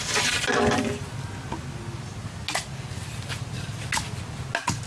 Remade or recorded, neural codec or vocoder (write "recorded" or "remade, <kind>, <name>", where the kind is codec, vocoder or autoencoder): recorded